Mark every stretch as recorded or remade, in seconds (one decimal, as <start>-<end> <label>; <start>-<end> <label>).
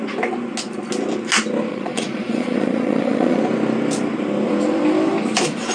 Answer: 0.0-1.7 recorded; 1.7-3.4 remade; 3.4-5.7 recorded